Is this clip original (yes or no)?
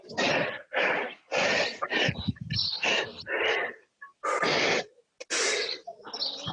yes